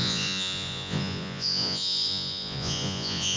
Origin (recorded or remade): remade